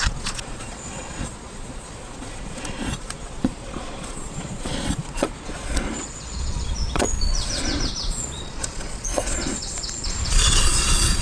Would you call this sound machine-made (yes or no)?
yes